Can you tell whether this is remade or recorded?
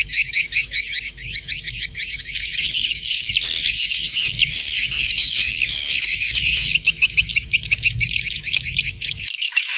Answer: remade